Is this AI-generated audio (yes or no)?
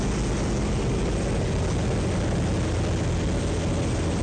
no